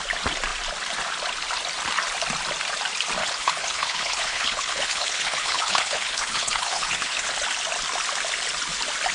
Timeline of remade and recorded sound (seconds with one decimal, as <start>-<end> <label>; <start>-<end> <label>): 0.0-3.2 recorded; 3.2-7.3 remade; 7.3-9.1 recorded